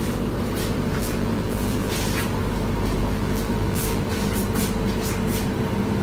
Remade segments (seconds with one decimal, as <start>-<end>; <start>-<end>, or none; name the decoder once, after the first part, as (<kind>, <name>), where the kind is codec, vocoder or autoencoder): 1.0-1.9 (vocoder, BigVGAN v2); 3.0-4.0